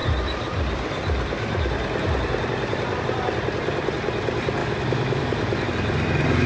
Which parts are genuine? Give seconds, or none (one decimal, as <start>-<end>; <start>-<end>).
0.0-4.6; 5.7-6.5